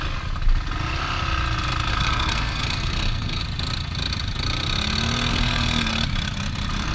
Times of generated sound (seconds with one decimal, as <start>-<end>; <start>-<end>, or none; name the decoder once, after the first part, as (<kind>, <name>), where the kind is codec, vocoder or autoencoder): 1.9-3.4 (codec, SNAC); 5.3-5.9